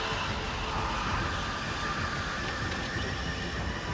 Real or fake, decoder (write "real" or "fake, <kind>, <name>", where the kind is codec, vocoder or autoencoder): real